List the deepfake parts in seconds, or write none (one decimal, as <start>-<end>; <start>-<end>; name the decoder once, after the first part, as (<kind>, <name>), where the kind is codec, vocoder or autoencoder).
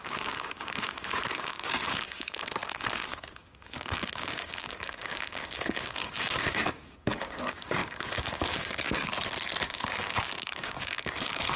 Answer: 0.0-9.1 (codec, DAC); 9.7-11.6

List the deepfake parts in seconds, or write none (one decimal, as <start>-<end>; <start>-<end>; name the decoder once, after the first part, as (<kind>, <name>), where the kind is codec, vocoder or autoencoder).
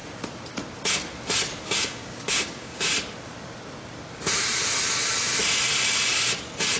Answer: 1.6-2.9 (codec, DAC)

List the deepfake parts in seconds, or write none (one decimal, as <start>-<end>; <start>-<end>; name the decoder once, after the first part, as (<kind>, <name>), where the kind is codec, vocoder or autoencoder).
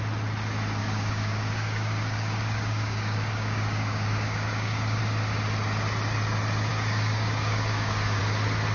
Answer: 0.8-5.0 (codec, DAC); 6.7-8.2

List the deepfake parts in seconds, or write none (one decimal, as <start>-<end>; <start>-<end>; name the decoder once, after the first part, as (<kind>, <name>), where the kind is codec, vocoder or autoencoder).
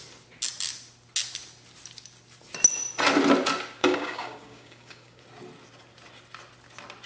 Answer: 3.8-5.2 (codec, DAC)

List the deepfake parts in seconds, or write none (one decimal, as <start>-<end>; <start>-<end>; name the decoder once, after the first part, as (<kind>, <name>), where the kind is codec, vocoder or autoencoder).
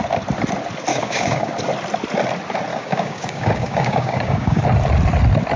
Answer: 0.9-1.5 (codec, DAC); 2.7-4.6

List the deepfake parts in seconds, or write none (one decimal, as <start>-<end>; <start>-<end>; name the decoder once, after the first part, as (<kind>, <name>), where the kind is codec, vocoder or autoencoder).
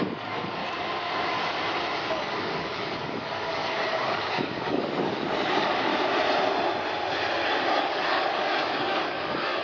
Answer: 0.0-0.6 (codec, DAC); 2.1-5.9; 7.8-9.6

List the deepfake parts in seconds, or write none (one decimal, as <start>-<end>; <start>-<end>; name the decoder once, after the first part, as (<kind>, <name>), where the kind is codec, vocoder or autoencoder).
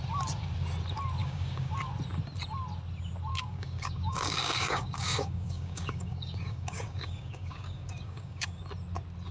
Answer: 1.2-1.7 (codec, DAC); 3.3-8.6